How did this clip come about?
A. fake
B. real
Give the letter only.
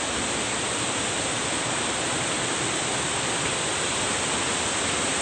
B